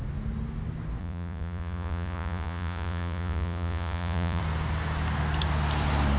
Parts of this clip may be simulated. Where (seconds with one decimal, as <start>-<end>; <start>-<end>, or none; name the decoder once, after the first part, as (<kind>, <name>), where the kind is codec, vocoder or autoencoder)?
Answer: 1.0-4.4 (vocoder, Vocos)